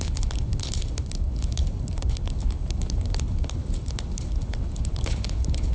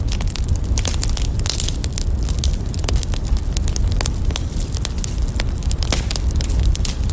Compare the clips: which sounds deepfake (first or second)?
first